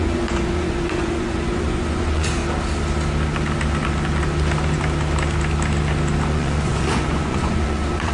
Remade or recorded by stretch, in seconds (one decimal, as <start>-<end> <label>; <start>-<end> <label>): 0.0-2.4 remade; 2.4-6.3 recorded; 6.3-8.1 remade